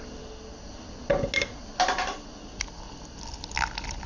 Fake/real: real